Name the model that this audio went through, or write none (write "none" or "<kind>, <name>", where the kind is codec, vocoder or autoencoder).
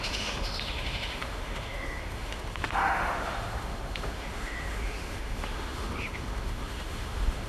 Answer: autoencoder, DAC-VAE